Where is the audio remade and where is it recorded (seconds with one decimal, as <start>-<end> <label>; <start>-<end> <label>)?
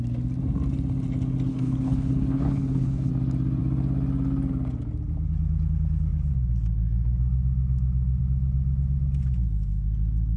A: 0.0-1.5 recorded; 1.5-3.1 remade; 3.1-10.4 recorded